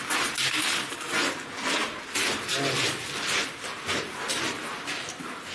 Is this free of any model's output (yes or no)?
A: yes